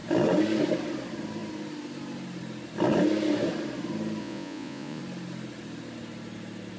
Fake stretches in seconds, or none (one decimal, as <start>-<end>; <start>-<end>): 4.2-5.0